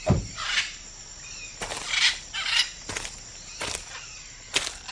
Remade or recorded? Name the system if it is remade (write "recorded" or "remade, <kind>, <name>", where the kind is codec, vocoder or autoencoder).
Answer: recorded